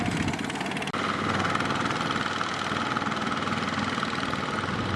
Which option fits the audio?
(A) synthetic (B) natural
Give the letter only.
B